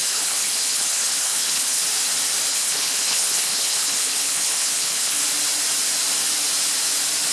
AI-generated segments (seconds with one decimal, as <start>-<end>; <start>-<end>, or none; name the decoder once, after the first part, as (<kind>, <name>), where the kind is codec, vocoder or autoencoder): 0.0-1.8 (codec, HILCodec); 2.5-5.2